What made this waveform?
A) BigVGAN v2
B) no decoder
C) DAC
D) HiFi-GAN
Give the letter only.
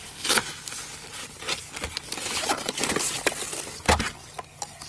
B